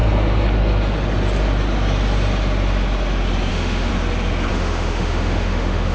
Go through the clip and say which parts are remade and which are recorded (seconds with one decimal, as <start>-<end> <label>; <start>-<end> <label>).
0.0-3.5 recorded; 3.5-3.9 remade; 3.9-4.5 recorded; 4.5-5.9 remade

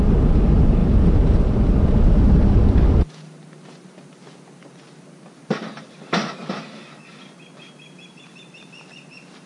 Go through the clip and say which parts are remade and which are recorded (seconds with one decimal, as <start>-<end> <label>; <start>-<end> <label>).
0.0-9.5 recorded